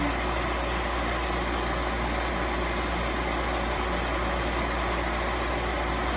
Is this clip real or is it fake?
real